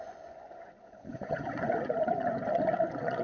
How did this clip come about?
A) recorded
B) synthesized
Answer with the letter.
B